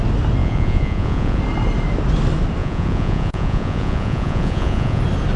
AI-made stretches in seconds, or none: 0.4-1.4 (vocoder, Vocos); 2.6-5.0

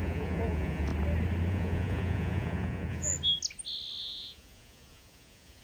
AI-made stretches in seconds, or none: 0.0-0.9 (vocoder, Vocos); 1.5-3.1; 4.0-5.6